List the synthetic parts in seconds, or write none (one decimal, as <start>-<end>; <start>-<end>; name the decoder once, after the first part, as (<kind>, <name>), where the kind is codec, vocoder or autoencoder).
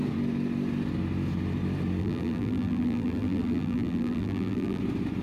2.0-4.8 (vocoder, BigVGAN v2)